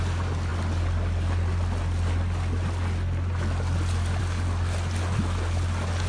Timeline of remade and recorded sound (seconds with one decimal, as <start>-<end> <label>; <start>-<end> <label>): 0.0-6.1 recorded

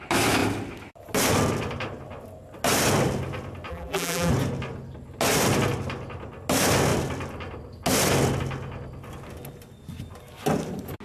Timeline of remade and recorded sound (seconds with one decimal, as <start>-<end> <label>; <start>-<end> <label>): 0.0-3.7 recorded; 3.7-4.3 remade; 4.3-11.0 recorded

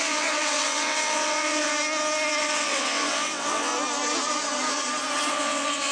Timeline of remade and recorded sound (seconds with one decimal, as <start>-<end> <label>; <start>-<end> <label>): 0.0-1.7 remade; 1.7-2.4 recorded; 2.4-3.7 remade; 3.7-5.3 recorded; 5.3-5.9 remade

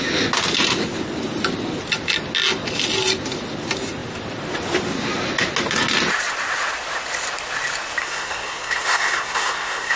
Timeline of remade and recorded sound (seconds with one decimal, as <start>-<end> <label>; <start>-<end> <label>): 0.0-8.0 recorded; 8.0-10.0 remade

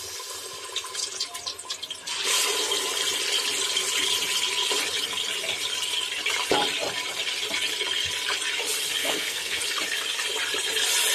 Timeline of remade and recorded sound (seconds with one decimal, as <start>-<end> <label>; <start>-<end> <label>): 0.0-9.0 recorded; 9.0-9.6 remade; 9.6-11.1 recorded

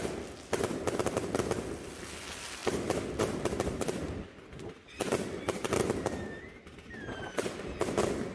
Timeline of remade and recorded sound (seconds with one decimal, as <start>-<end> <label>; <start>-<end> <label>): 0.0-8.3 recorded

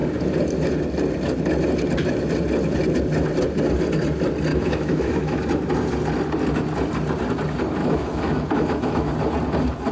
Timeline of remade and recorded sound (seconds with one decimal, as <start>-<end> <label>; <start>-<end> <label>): 0.0-4.5 recorded; 4.5-5.4 remade; 5.4-7.8 recorded; 7.8-9.1 remade; 9.1-9.9 recorded

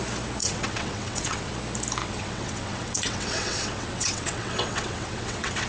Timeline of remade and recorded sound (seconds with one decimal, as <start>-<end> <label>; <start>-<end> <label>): 0.0-0.4 recorded; 0.4-1.5 remade; 1.5-2.0 recorded; 2.0-5.7 remade